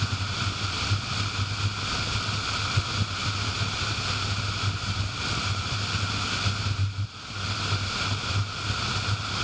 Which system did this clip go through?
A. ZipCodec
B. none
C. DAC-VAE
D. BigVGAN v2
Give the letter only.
B